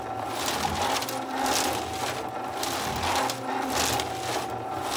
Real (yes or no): yes